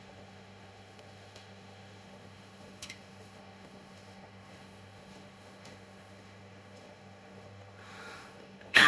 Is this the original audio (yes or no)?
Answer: no